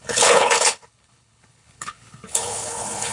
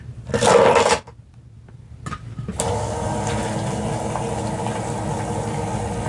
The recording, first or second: second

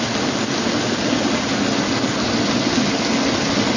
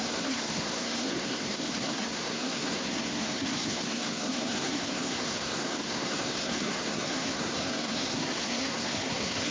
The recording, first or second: first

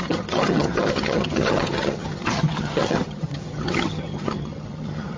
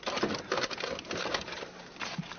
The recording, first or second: second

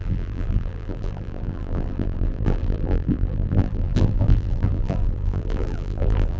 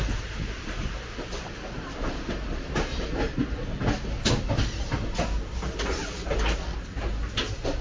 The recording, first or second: second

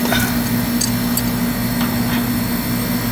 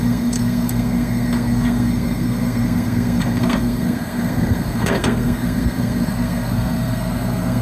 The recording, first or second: first